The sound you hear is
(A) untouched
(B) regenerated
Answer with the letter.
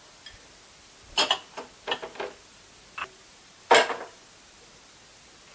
A